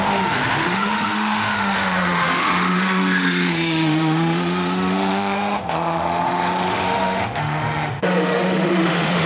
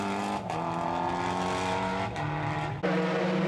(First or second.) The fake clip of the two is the first